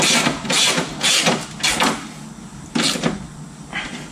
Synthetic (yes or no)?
no